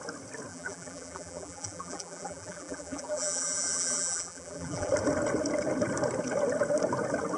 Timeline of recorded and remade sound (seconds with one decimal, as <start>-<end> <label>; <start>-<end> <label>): 0.0-0.5 recorded; 0.5-4.9 remade; 4.9-7.4 recorded